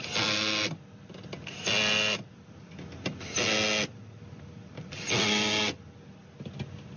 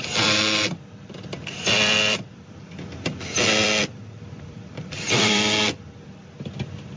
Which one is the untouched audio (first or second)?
first